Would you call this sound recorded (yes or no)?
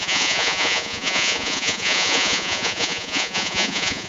no